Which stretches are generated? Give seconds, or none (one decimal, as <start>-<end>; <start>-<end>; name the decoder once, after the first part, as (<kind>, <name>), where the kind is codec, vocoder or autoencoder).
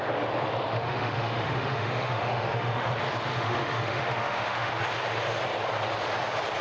0.7-2.9 (autoencoder, DAC-VAE); 3.3-4.7